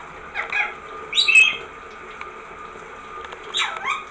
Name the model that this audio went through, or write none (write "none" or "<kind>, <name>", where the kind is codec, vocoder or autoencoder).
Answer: none